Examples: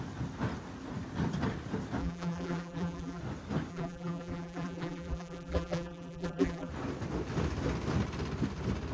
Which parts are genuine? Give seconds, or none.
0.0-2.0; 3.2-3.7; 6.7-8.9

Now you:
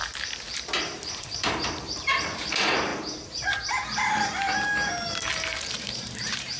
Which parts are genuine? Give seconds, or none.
0.0-1.2; 2.9-5.8

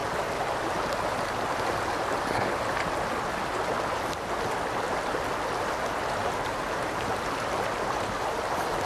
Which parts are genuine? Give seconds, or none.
0.0-6.2; 7.1-8.9

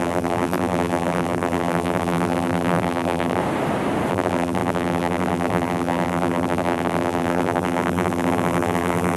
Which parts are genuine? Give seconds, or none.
3.4-4.1

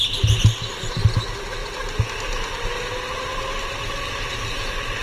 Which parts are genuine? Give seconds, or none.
0.0-5.0

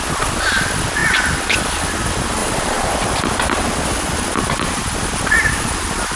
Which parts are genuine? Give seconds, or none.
0.0-2.4; 2.9-6.2

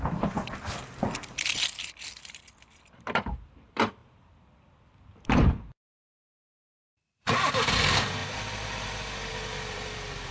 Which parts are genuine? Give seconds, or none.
none